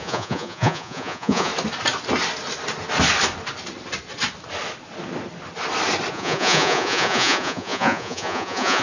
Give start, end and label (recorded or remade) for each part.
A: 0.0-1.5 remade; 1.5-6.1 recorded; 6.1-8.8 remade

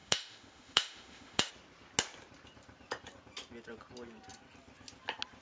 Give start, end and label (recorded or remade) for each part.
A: 0.0-1.5 remade; 1.5-5.4 recorded

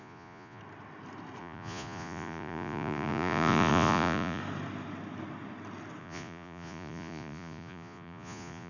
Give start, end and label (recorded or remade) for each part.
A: 0.0-0.6 remade; 0.6-1.4 recorded; 1.4-4.4 remade; 4.4-6.0 recorded; 6.0-8.7 remade

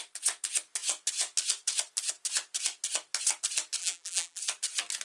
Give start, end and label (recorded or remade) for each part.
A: 0.0-3.8 recorded; 3.8-4.4 remade; 4.4-5.0 recorded